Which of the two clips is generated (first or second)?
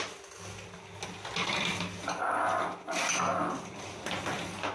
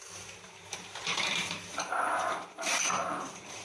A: second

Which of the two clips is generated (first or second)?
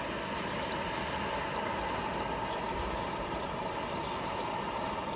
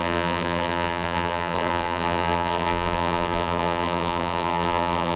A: second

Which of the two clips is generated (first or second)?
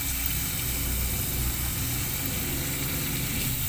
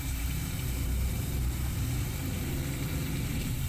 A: second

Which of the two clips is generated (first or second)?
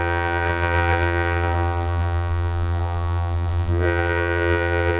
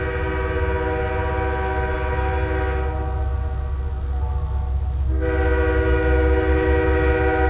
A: first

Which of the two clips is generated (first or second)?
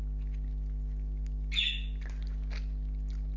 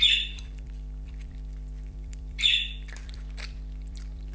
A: second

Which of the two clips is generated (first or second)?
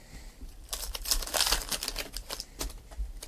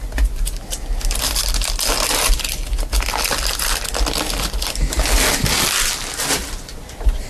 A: first